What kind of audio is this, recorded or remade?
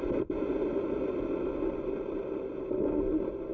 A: recorded